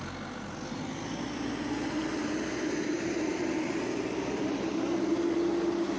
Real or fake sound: real